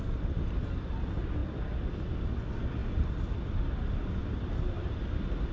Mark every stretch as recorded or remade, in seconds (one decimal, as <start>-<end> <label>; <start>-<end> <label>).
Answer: 0.0-5.5 recorded